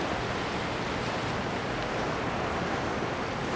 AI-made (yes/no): no